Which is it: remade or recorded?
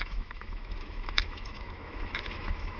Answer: remade